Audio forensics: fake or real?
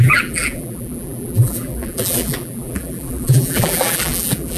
fake